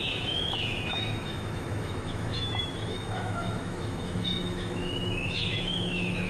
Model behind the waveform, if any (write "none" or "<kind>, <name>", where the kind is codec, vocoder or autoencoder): autoencoder, DAC-VAE